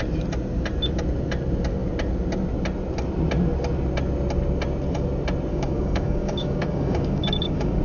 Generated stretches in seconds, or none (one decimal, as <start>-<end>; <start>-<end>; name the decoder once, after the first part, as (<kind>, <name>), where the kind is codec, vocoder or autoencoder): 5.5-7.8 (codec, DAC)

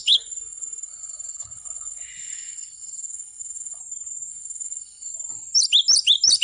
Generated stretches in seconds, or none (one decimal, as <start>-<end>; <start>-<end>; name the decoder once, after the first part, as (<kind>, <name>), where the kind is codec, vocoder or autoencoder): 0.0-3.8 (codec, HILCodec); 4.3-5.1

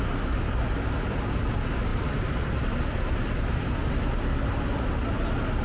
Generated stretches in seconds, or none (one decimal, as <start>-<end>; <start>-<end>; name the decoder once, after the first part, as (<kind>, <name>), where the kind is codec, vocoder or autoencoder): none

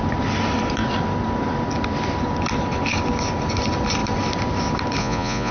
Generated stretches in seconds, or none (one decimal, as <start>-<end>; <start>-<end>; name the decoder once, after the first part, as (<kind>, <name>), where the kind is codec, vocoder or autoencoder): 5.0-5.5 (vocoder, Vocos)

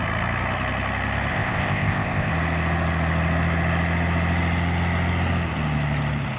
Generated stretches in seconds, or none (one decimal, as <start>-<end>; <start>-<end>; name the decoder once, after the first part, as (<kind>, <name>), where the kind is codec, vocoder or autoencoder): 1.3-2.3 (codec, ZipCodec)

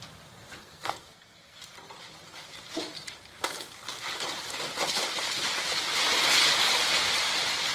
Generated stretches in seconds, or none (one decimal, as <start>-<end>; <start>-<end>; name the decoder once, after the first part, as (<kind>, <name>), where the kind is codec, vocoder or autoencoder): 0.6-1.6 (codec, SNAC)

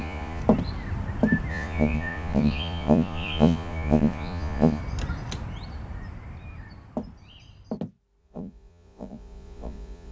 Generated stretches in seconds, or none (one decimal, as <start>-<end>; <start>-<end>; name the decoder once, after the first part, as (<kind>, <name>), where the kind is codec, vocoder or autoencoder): 0.0-0.4 (vocoder, Vocos); 1.5-4.8; 8.2-10.1

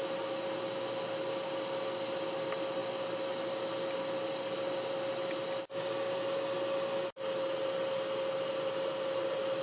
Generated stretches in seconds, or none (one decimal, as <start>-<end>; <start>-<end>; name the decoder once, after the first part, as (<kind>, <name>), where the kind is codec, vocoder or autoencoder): none